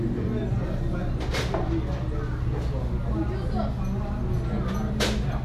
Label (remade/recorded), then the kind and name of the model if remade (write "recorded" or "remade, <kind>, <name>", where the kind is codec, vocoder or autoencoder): recorded